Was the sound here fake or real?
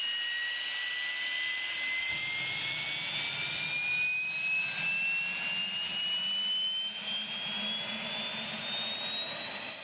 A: real